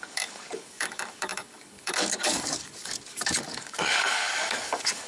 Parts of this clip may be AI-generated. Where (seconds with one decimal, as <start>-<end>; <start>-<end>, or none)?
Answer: 0.0-5.1